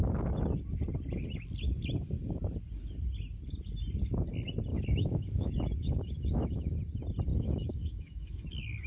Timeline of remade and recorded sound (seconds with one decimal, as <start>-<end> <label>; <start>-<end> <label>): 0.0-4.7 recorded; 4.7-6.8 remade; 6.8-7.3 recorded; 7.3-8.4 remade; 8.4-8.9 recorded